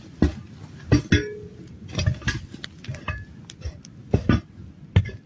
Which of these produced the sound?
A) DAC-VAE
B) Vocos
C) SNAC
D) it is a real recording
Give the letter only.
D